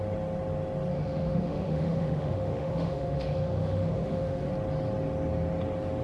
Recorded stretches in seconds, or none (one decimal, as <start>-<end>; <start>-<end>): 0.0-0.9; 4.5-6.0